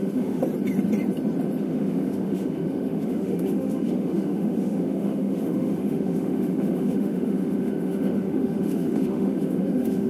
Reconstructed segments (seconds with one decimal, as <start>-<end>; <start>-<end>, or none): 0.0-0.4; 1.6-10.1